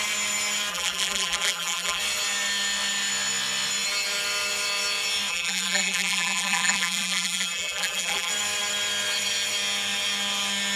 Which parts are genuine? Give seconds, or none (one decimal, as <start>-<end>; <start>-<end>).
0.0-0.7; 2.0-5.3; 8.3-10.8